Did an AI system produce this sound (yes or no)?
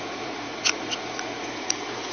yes